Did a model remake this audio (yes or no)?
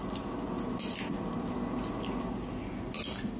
yes